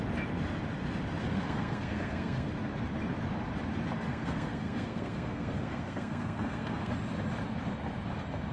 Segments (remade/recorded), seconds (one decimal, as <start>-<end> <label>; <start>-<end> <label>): 0.0-1.2 recorded; 1.2-2.5 remade; 2.5-4.1 recorded; 4.1-6.9 remade; 6.9-8.5 recorded